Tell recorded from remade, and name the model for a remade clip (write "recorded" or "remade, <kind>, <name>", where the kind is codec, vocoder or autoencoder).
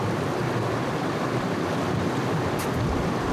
recorded